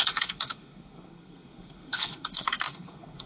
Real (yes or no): no